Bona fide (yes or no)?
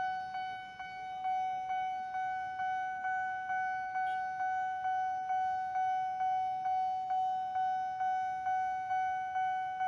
yes